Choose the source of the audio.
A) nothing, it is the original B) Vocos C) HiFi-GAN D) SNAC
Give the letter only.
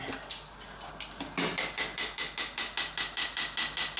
A